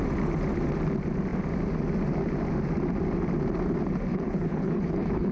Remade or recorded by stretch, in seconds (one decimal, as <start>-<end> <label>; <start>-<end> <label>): 0.0-4.1 recorded; 4.1-5.3 remade